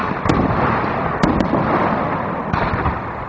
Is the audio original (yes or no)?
yes